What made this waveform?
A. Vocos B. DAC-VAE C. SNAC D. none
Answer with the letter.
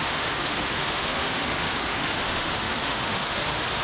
B